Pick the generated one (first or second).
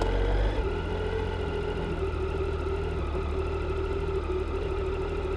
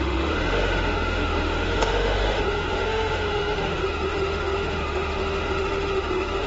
second